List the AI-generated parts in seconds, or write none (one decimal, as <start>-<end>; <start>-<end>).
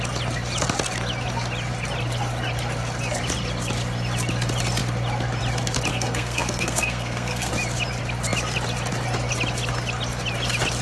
5.9-7.5